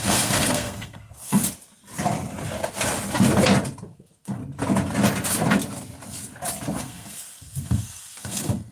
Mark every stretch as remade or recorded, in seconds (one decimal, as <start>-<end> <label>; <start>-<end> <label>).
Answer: 0.0-1.4 remade; 1.4-3.8 recorded; 3.8-4.4 remade; 4.4-6.8 recorded; 6.8-8.7 remade